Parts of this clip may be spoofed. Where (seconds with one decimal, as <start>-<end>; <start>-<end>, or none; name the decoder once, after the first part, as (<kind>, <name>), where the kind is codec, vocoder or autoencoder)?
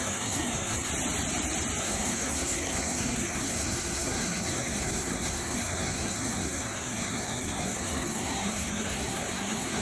0.0-0.9 (codec, SNAC); 1.8-9.8